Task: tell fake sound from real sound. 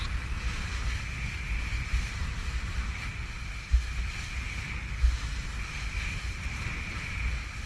real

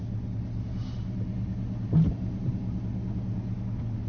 real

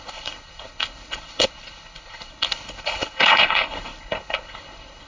fake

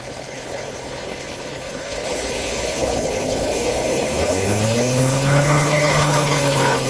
fake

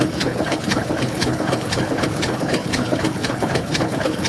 fake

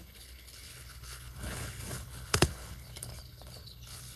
fake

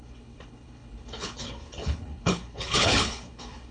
fake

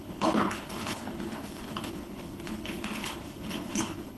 fake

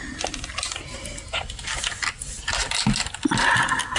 real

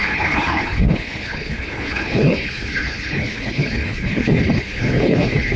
fake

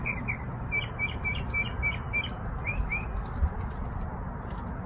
real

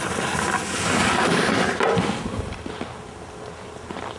real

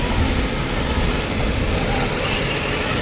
real